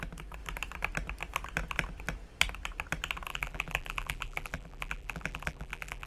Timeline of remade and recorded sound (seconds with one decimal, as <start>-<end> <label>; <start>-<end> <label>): 0.0-3.3 recorded; 3.3-6.1 remade